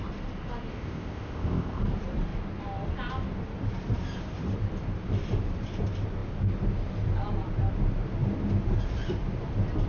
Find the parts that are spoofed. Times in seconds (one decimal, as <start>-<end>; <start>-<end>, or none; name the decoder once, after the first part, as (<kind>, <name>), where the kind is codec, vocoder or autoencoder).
0.7-1.8 (codec, ZipCodec)